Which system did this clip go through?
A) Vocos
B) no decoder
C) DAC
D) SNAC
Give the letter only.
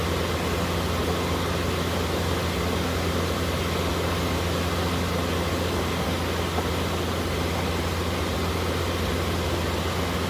B